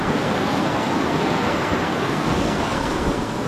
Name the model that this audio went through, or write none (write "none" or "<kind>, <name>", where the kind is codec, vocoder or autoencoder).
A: codec, SNAC